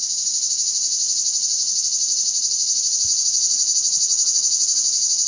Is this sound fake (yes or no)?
no